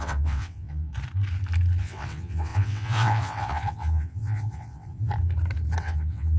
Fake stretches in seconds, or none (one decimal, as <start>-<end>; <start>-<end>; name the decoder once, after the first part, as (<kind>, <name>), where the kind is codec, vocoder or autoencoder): 0.0-0.9 (vocoder, WaveNeXt); 1.8-5.1; 5.8-6.4